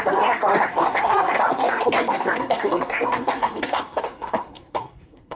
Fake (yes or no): yes